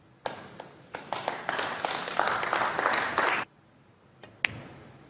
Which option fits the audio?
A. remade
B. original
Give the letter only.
B